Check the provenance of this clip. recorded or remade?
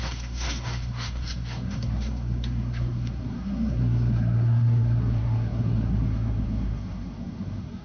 remade